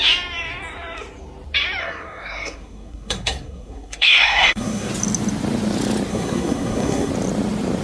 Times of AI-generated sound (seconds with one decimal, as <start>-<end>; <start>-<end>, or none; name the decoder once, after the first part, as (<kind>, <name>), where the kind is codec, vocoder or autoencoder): 1.8-4.9 (codec, SNAC); 6.1-7.1